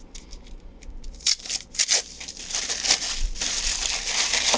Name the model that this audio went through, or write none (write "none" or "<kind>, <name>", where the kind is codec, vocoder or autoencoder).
none